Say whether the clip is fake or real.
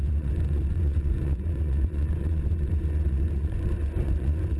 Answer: fake